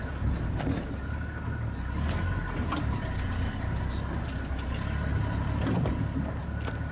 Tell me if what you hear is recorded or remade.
recorded